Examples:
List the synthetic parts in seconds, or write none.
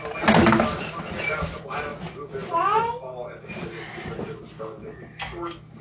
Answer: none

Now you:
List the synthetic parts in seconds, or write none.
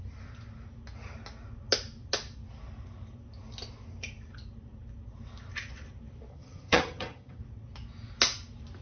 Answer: 6.3-7.4 (vocoder, HiFi-GAN)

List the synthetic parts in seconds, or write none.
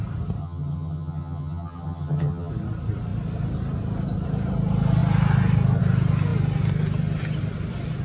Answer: 0.4-2.5 (vocoder, HiFi-GAN)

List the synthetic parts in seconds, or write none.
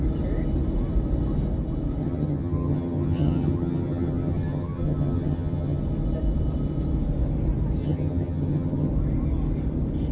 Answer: 2.0-5.8 (vocoder, HiFi-GAN); 7.8-8.9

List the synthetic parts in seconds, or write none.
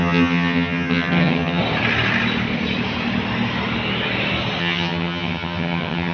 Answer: 0.0-1.6 (vocoder, HiFi-GAN); 4.6-6.1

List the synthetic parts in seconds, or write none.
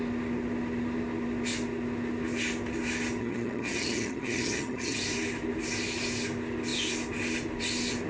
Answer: 3.2-5.0 (vocoder, HiFi-GAN)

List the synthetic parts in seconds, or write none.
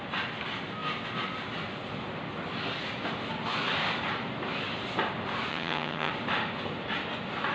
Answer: 5.5-6.1 (vocoder, HiFi-GAN)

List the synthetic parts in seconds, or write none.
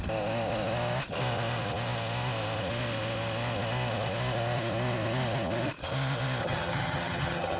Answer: 6.4-7.6 (vocoder, HiFi-GAN)